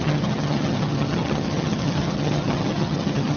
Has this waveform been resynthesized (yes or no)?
yes